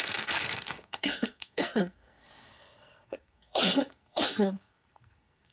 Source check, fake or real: fake